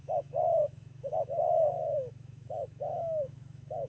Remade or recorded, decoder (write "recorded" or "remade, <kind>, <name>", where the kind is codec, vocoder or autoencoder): remade, autoencoder, DAC-VAE